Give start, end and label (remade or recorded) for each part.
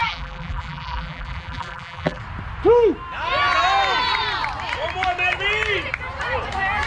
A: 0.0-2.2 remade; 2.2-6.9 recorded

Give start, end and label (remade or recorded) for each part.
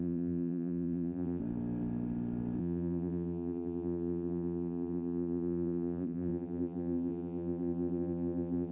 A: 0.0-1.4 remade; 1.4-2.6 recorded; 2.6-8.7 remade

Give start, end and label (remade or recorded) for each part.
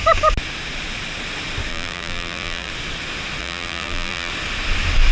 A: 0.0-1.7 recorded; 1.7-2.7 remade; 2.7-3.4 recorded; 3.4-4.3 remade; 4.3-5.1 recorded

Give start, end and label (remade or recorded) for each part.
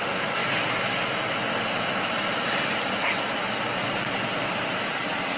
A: 0.0-5.4 recorded